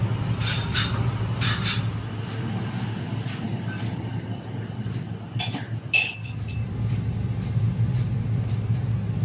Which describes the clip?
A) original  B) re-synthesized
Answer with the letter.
A